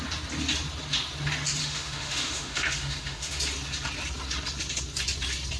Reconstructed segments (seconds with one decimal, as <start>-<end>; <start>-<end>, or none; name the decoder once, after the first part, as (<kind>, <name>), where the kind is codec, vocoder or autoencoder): 1.6-3.4 (autoencoder, DAC-VAE)